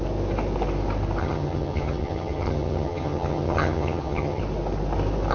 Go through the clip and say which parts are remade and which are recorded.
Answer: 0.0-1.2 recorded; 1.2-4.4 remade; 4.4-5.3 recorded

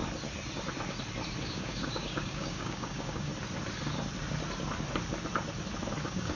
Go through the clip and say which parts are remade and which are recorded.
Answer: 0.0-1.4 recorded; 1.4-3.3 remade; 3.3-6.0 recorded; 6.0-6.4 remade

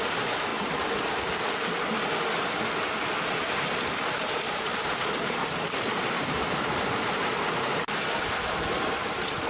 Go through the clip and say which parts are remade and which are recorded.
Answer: 0.0-0.5 remade; 0.5-4.5 recorded; 4.5-5.4 remade; 5.4-6.1 recorded; 6.1-9.5 remade

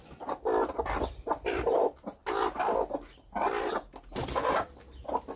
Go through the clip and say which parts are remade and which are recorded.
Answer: 0.0-5.4 recorded

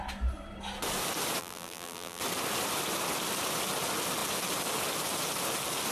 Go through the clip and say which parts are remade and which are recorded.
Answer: 0.0-1.4 recorded; 1.4-2.2 remade; 2.2-5.9 recorded